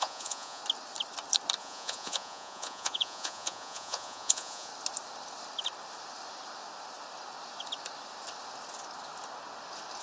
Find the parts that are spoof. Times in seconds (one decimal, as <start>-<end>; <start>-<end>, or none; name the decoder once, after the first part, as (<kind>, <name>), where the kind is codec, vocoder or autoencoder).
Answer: 0.0-0.6 (vocoder, Vocos); 1.6-4.7

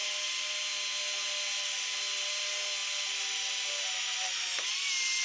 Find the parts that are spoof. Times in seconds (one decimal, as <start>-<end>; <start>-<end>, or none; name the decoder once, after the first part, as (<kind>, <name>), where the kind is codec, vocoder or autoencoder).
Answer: none

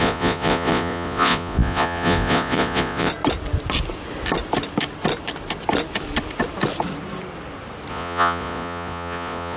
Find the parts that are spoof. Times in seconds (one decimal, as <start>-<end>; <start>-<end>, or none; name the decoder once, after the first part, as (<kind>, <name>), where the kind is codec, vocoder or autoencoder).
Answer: 0.0-3.1 (vocoder, Vocos); 7.9-9.6

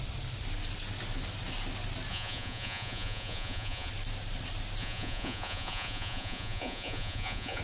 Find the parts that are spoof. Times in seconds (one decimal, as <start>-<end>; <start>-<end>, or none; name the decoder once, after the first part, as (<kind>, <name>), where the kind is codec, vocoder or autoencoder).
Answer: 2.1-3.9 (vocoder, Vocos); 4.8-7.6

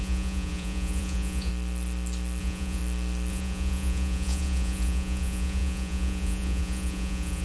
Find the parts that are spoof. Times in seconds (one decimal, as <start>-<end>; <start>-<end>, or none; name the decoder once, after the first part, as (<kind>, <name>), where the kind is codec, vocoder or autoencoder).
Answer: 0.0-1.5 (vocoder, Vocos); 2.4-2.8; 3.3-7.4

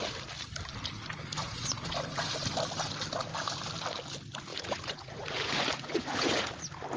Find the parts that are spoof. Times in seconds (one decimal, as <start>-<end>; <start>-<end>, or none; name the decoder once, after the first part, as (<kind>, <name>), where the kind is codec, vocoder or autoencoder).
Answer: 1.3-1.9 (vocoder, Vocos); 4.5-6.5

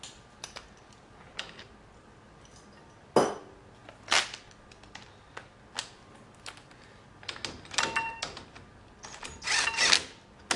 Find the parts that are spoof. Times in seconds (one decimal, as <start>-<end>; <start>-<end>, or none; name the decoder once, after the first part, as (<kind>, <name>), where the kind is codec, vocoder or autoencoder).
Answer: none

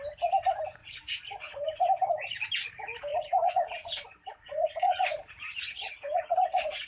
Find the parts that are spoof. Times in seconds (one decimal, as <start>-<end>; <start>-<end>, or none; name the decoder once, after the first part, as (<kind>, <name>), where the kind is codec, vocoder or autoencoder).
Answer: 0.8-1.8 (vocoder, Vocos); 3.1-6.9